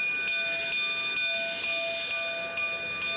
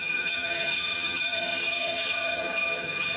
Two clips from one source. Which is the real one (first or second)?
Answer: first